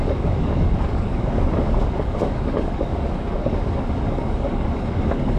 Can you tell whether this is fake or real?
fake